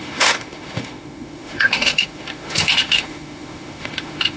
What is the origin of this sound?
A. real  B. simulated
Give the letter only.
B